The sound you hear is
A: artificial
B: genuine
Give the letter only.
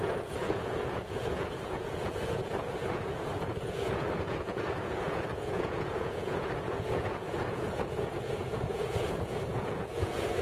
A